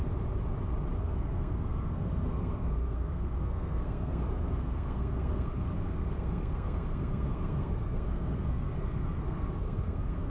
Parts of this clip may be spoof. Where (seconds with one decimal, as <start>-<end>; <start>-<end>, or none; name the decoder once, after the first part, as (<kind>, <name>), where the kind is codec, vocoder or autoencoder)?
1.0-10.3 (codec, SNAC)